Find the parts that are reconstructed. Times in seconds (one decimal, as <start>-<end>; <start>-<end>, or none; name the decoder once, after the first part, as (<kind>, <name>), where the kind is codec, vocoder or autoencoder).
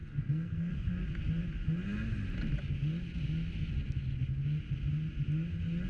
0.0-0.9 (codec, SNAC)